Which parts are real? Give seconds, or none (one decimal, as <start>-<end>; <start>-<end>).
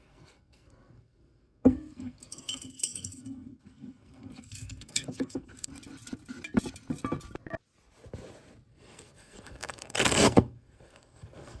5.7-8.7